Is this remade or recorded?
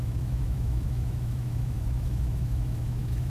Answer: remade